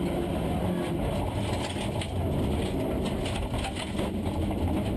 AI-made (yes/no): no